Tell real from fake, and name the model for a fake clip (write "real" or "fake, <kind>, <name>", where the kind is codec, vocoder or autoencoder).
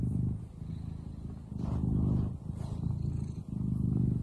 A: real